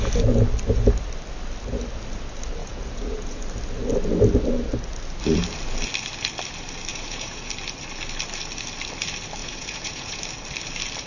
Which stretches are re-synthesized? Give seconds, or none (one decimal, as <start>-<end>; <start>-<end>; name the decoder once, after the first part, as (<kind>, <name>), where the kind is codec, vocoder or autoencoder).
2.6-3.4 (vocoder, Vocos); 6.9-7.5; 9.4-10.2